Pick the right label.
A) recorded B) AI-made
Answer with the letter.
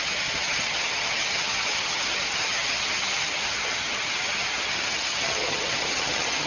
B